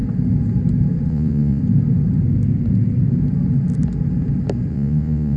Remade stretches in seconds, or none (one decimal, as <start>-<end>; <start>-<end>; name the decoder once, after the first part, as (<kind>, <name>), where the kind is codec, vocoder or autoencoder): 1.1-1.6 (vocoder, Vocos); 4.7-5.4